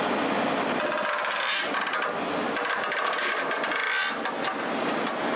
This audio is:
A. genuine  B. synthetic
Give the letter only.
A